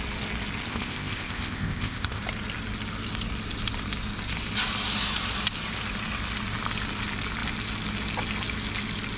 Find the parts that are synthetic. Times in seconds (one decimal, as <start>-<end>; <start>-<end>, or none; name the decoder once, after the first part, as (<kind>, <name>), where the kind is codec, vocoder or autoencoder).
0.7-2.2 (codec, ZipCodec)